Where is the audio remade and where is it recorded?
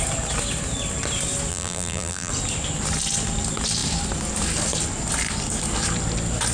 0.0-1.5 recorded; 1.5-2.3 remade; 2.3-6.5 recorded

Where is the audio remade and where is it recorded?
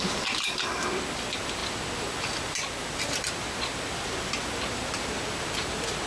0.0-6.1 recorded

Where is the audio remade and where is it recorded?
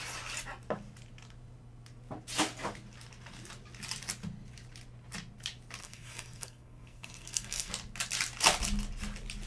0.0-5.8 recorded; 5.8-7.7 remade; 7.7-9.5 recorded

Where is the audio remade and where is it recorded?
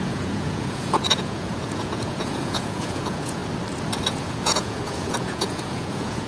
0.0-3.4 remade; 3.4-4.1 recorded; 4.1-6.3 remade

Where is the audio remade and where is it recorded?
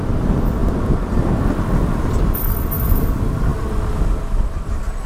0.0-5.1 recorded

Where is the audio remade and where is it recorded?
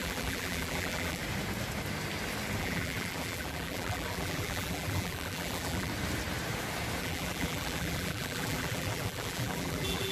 0.0-1.2 remade; 1.2-2.6 recorded; 2.6-5.9 remade; 5.9-7.0 recorded; 7.0-10.1 remade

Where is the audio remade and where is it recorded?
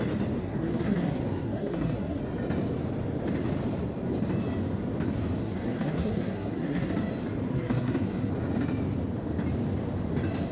0.0-0.4 recorded; 0.4-2.2 remade; 2.2-5.4 recorded; 5.4-6.9 remade; 6.9-7.5 recorded; 7.5-8.3 remade; 8.3-10.5 recorded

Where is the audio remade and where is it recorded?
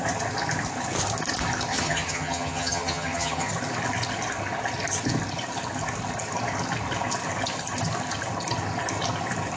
0.0-1.7 recorded; 1.7-3.5 remade; 3.5-9.6 recorded